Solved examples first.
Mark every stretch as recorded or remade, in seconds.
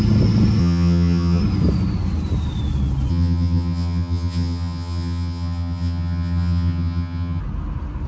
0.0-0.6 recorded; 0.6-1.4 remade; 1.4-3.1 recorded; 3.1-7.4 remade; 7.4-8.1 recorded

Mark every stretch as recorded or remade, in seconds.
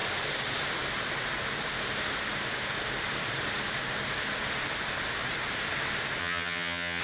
0.0-6.2 recorded; 6.2-7.0 remade